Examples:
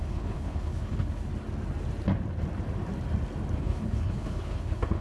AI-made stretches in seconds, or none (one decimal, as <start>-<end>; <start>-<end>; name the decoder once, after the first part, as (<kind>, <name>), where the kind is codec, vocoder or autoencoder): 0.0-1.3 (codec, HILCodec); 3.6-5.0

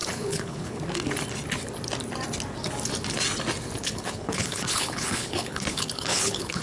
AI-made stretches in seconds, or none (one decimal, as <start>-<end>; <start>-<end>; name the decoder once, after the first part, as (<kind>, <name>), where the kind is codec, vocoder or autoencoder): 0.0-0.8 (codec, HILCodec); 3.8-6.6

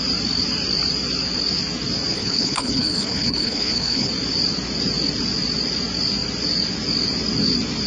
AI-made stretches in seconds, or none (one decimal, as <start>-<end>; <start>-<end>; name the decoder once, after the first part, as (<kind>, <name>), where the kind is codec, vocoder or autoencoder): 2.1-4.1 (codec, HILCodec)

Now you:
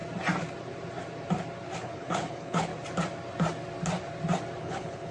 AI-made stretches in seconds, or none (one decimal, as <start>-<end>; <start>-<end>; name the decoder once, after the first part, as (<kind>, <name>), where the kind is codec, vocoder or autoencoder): 1.8-2.7 (codec, HILCodec); 4.6-5.1

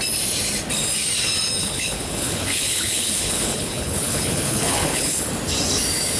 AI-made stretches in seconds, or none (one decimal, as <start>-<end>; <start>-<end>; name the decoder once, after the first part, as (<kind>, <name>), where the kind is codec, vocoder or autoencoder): 1.6-5.3 (codec, HILCodec)

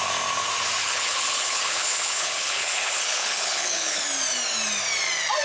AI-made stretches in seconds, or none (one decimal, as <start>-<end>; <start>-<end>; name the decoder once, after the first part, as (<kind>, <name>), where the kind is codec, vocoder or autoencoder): 0.8-4.0 (codec, HILCodec)